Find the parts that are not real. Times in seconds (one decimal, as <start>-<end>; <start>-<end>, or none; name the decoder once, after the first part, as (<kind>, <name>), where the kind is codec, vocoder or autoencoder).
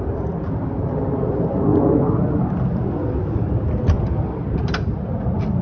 none